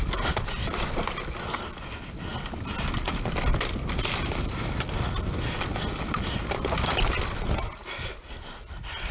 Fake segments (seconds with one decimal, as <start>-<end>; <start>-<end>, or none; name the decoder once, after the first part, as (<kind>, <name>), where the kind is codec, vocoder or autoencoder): none